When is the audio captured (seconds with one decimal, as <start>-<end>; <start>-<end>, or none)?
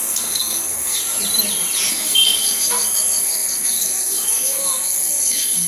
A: 1.0-1.9